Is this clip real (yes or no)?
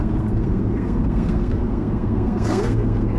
no